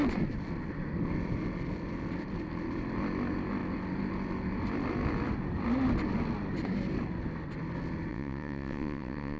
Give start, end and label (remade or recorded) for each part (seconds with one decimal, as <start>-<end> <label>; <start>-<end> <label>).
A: 0.0-8.1 recorded; 8.1-9.4 remade